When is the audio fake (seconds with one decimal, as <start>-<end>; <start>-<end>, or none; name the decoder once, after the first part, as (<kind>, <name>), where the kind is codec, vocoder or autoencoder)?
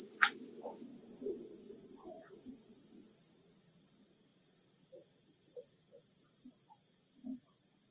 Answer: 0.0-7.9 (vocoder, Vocos)